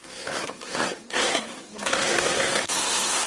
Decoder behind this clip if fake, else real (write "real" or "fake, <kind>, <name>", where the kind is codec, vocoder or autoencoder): fake, codec, SNAC